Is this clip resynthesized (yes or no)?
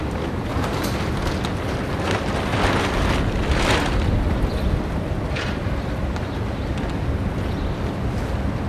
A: no